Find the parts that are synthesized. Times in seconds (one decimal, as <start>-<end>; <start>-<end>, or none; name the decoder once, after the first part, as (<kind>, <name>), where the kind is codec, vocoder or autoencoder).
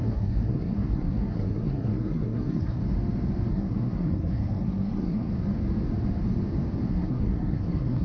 0.0-2.8 (codec, SNAC); 3.5-5.3; 6.9-8.0